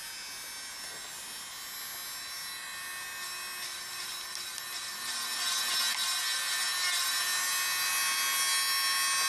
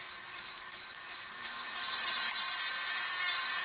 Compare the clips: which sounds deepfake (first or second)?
second